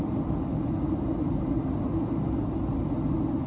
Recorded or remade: recorded